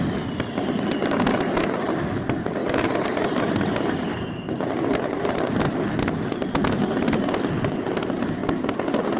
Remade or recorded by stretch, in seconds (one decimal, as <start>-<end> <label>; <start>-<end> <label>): 0.0-9.2 recorded